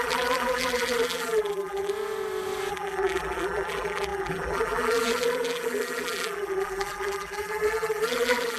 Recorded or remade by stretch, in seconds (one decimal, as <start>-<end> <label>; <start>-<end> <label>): 0.0-1.9 remade; 1.9-2.7 recorded; 2.7-8.6 remade